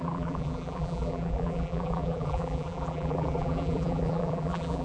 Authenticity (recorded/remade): remade